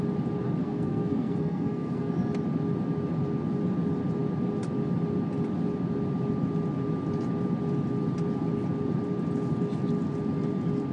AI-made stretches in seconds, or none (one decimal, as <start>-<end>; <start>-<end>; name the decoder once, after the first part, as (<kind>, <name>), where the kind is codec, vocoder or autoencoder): 0.6-2.1 (codec, SNAC)